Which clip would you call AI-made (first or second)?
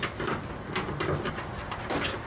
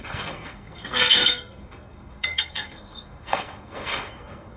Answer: second